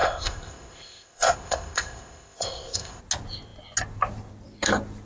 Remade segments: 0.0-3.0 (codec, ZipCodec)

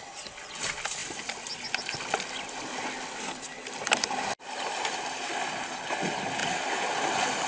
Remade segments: none

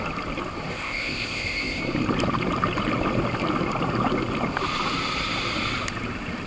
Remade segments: 0.7-1.8 (codec, ZipCodec)

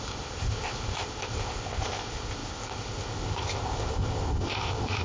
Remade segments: 0.0-5.0 (codec, ZipCodec)